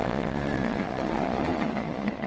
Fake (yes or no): yes